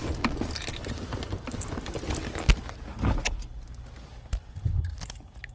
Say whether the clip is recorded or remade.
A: recorded